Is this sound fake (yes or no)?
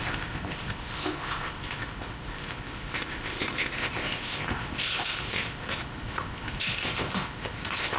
yes